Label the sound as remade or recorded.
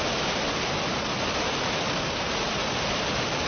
recorded